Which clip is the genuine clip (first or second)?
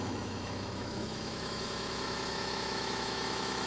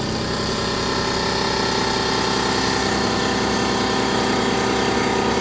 second